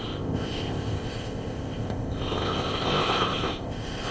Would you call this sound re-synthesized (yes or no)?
yes